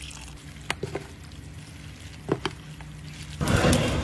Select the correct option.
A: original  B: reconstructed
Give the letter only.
A